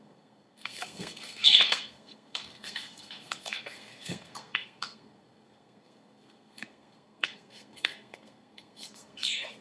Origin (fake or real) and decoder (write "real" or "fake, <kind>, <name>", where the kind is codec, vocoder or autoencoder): fake, codec, SNAC